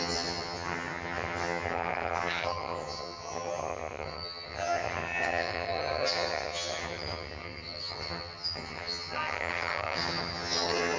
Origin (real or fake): fake